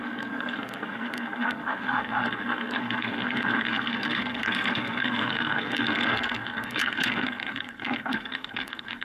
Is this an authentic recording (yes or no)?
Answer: no